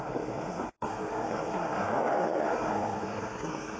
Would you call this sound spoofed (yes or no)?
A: yes